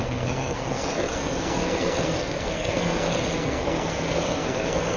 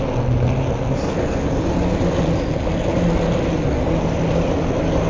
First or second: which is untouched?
second